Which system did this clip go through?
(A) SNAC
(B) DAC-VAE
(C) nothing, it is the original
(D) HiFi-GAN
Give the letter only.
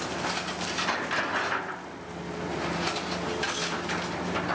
C